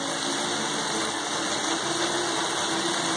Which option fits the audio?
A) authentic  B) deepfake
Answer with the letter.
A